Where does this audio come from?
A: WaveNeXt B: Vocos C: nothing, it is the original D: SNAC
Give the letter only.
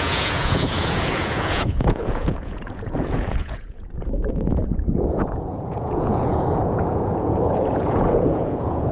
B